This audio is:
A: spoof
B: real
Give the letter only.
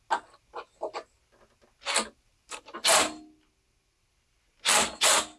B